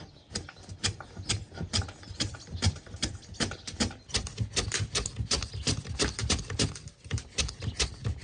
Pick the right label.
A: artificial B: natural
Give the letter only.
B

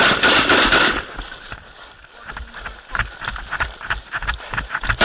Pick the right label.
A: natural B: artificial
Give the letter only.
A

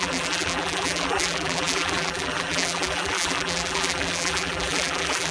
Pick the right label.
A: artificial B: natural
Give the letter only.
A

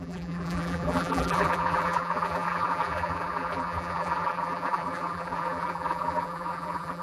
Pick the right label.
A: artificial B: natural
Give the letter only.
A